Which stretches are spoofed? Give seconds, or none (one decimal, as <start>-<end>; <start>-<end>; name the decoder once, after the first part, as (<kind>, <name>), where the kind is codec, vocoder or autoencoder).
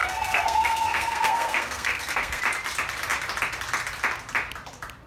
0.0-2.4 (codec, SNAC)